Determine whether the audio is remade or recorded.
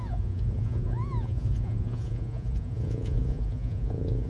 remade